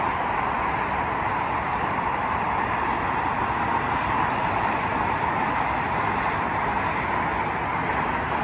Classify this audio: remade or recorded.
recorded